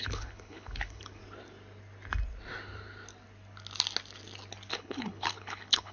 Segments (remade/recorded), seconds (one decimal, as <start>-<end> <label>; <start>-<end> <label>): 0.0-1.2 remade; 1.2-4.7 recorded; 4.7-5.9 remade